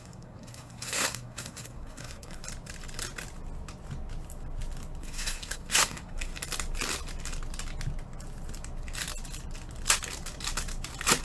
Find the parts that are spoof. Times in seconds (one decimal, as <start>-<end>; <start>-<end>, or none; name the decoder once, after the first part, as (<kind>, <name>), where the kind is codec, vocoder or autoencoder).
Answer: 0.0-2.4 (codec, SNAC); 5.0-6.3